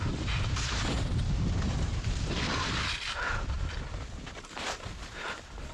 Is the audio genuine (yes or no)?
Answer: yes